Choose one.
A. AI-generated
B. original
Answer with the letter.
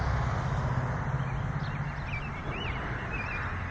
B